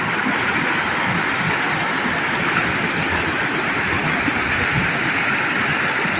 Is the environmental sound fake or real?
real